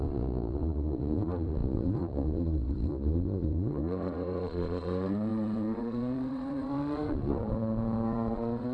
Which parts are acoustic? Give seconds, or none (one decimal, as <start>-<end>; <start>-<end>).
none

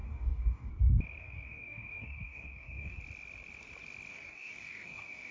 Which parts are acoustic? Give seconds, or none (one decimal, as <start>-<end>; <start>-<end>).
0.7-1.2; 3.0-4.1